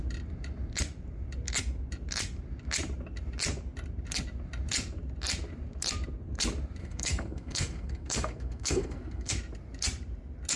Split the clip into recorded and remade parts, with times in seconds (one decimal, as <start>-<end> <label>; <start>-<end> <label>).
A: 0.0-6.8 recorded; 6.8-9.3 remade; 9.3-10.6 recorded